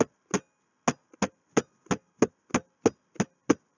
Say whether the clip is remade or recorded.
recorded